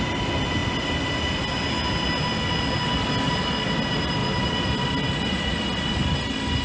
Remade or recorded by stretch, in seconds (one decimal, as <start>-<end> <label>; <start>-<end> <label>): 0.0-6.6 recorded